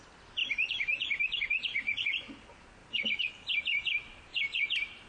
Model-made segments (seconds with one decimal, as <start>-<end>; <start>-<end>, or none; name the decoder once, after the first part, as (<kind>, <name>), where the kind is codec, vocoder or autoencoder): 0.4-2.3 (vocoder, BigVGAN v2); 2.8-3.3; 4.3-5.1